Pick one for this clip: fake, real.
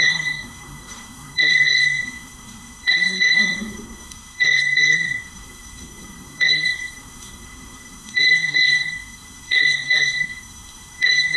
fake